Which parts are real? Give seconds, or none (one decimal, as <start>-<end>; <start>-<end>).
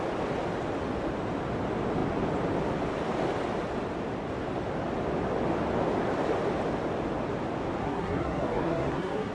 0.0-7.8